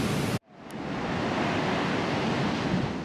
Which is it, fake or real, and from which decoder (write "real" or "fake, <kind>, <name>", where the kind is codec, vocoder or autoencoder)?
real